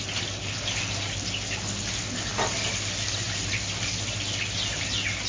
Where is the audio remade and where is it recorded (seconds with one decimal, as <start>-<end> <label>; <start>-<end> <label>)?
0.0-5.3 recorded

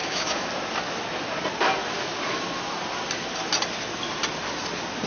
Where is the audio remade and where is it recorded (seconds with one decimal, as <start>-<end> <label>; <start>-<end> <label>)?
0.0-0.5 remade; 0.5-5.1 recorded

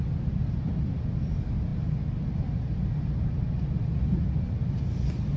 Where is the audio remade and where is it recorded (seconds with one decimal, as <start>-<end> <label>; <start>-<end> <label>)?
0.0-5.4 recorded

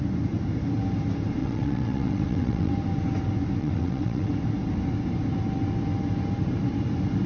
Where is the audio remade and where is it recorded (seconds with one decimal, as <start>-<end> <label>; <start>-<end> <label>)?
0.0-1.4 recorded; 1.4-2.7 remade; 2.7-3.6 recorded; 3.6-4.3 remade; 4.3-7.3 recorded

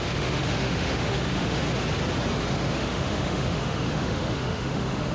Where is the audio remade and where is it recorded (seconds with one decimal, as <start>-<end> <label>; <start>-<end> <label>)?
0.0-1.6 remade; 1.6-2.4 recorded; 2.4-5.1 remade